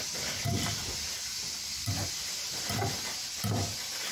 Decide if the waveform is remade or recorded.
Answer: recorded